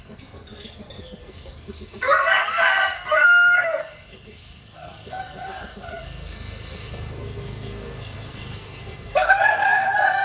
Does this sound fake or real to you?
fake